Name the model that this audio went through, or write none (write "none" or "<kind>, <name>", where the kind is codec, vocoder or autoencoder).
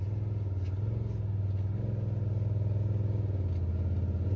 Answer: none